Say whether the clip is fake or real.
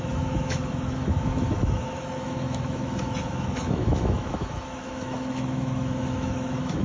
fake